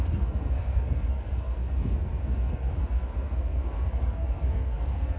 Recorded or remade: remade